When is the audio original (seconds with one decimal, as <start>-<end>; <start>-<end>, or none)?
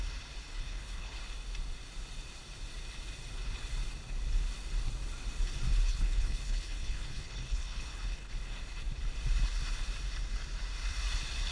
0.0-0.5; 1.2-5.7; 8.3-11.5